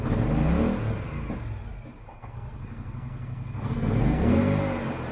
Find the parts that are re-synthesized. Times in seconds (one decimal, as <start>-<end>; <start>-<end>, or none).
2.0-4.6